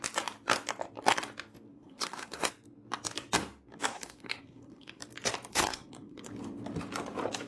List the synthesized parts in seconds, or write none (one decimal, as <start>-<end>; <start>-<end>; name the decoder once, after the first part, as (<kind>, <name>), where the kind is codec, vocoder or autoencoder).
1.7-2.5 (codec, SNAC); 3.9-5.0; 5.5-6.3

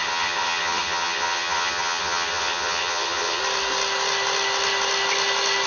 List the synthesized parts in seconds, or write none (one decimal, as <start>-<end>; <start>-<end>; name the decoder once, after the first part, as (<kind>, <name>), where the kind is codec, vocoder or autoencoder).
0.0-3.4 (vocoder, HiFi-GAN)

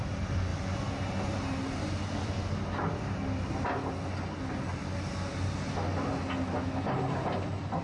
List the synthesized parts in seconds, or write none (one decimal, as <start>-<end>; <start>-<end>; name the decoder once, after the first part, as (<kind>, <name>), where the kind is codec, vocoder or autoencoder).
none

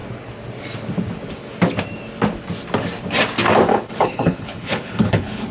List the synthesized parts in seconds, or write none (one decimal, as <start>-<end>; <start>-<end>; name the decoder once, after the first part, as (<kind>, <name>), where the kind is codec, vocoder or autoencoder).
3.7-5.5 (codec, HILCodec)

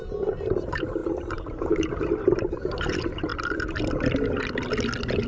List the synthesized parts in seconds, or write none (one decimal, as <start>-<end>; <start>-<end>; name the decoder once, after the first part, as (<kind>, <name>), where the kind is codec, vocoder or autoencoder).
0.0-3.3 (vocoder, BigVGAN v2)

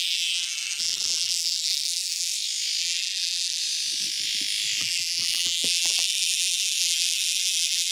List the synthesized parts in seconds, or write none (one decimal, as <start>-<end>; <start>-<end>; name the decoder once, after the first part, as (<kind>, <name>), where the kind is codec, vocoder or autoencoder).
0.0-2.3 (vocoder, BigVGAN v2); 2.8-3.6; 4.8-7.9

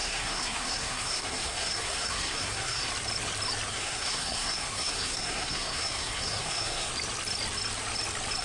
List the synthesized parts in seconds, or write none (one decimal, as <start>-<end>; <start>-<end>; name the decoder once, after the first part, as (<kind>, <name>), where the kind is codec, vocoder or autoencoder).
0.0-2.9 (codec, SNAC); 3.7-6.9

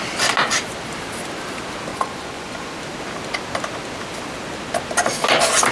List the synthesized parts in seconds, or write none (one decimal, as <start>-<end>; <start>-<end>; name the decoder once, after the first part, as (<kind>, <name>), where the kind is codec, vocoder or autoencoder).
1.9-2.8 (vocoder, Vocos)